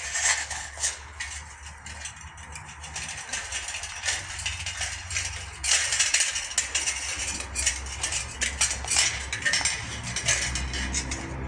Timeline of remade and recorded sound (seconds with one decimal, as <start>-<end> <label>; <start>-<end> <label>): 0.0-0.4 recorded; 0.4-1.2 remade; 1.2-11.5 recorded